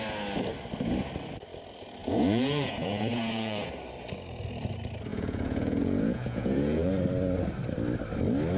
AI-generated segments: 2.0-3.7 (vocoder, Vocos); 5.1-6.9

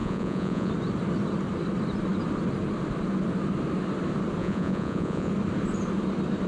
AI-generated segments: 0.0-0.7 (vocoder, Vocos); 4.4-5.3

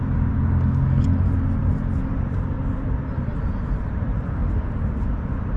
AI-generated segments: 1.6-2.5 (vocoder, BigVGAN v2); 4.4-5.6

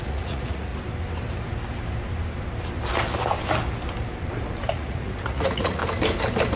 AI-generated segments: 0.0-0.7 (vocoder, Vocos); 4.7-5.8

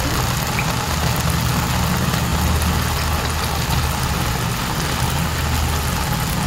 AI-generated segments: none